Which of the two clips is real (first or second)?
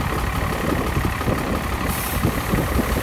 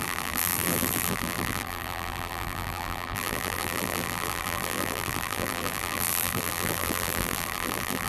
first